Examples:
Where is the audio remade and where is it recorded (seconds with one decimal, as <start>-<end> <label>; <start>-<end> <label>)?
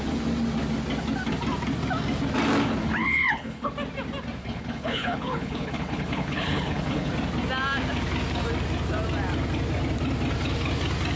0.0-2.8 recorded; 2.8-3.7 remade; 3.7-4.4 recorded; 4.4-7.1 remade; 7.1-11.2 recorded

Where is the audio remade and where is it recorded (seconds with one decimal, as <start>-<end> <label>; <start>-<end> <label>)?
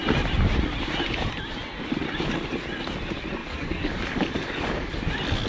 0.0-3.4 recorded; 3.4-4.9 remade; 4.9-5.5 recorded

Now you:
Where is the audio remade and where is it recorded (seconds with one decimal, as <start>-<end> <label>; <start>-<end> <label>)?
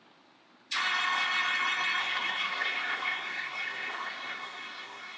0.0-2.0 recorded; 2.0-5.2 remade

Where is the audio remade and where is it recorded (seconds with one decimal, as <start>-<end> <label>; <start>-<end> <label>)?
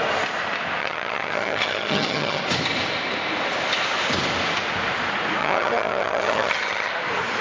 0.0-0.8 recorded; 0.8-2.4 remade; 2.4-5.4 recorded; 5.4-6.9 remade; 6.9-7.4 recorded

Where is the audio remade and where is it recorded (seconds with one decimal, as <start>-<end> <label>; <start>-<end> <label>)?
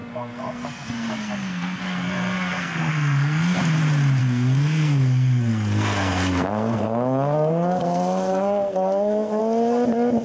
0.0-3.6 remade; 3.6-4.2 recorded; 4.2-9.4 remade; 9.4-10.2 recorded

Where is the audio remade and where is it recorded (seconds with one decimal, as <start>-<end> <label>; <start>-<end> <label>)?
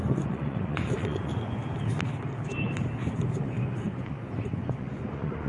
0.0-1.6 remade; 1.6-3.4 recorded; 3.4-5.5 remade